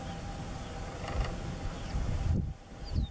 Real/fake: real